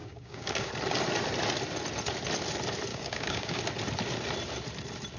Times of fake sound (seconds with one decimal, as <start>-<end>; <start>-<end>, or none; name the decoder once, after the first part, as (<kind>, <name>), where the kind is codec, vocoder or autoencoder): 0.0-0.7 (codec, DAC); 2.9-3.6